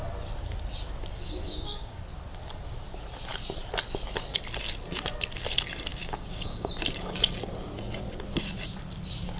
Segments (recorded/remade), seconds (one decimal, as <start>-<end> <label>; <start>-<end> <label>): 0.0-1.1 recorded; 1.1-2.0 remade; 2.0-5.9 recorded; 5.9-6.7 remade; 6.7-9.4 recorded